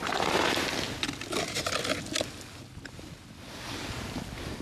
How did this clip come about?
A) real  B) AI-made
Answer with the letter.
A